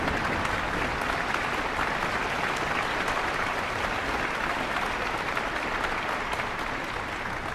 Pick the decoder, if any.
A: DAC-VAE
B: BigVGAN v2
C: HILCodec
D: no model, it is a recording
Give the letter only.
D